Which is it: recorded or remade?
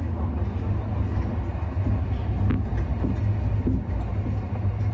recorded